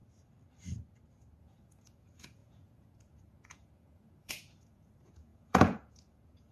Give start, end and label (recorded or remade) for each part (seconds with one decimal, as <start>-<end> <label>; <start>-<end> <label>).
0.0-1.4 recorded; 1.4-6.5 remade